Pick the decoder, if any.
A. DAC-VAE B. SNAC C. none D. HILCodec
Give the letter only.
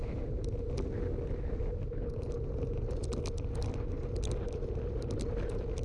C